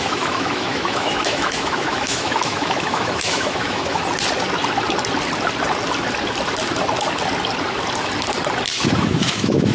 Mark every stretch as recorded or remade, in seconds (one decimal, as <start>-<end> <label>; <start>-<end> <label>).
0.0-4.0 remade; 4.0-9.0 recorded; 9.0-9.7 remade